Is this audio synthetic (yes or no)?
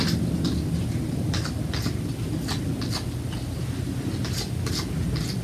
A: no